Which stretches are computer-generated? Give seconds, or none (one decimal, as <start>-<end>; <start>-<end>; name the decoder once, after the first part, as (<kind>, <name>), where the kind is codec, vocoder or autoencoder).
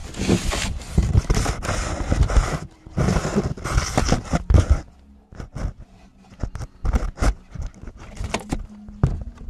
none